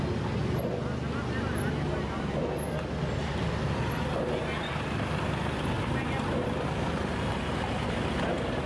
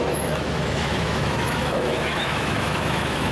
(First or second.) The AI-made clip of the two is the second